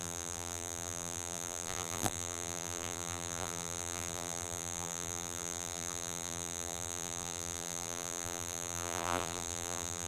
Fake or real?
fake